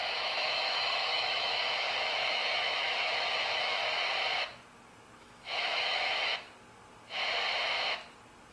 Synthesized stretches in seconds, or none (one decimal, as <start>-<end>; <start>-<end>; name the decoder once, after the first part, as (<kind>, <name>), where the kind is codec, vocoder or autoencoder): 0.0-3.8 (autoencoder, DAC-VAE); 5.2-6.3